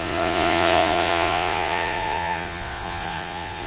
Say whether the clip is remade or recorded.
remade